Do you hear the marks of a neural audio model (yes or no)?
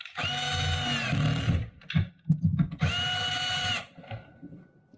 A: no